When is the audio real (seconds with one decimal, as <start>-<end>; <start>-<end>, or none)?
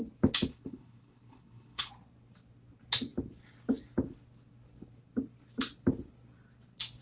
0.0-0.5; 1.9-7.0